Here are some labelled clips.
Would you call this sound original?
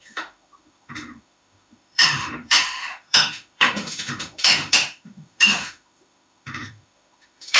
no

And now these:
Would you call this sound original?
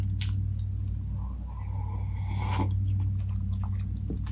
yes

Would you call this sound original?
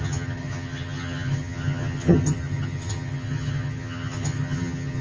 no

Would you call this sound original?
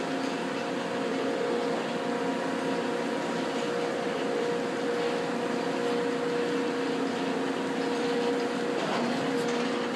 yes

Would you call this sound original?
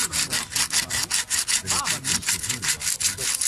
yes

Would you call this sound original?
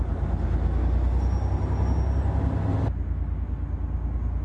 yes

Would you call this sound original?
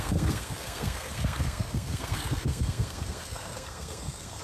no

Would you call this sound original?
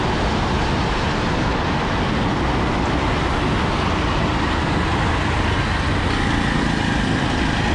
yes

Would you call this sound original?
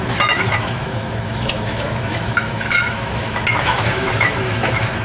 no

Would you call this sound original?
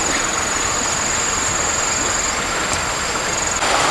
yes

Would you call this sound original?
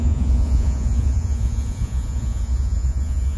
no